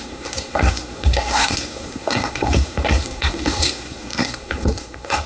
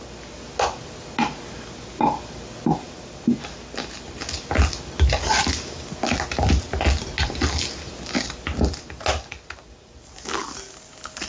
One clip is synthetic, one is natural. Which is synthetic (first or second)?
first